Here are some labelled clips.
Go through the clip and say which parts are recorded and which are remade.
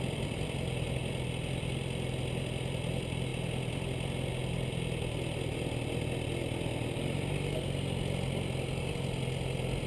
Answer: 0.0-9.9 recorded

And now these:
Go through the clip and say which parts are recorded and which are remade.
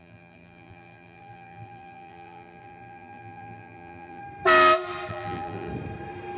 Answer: 0.0-4.2 remade; 4.2-5.1 recorded; 5.1-5.7 remade; 5.7-6.4 recorded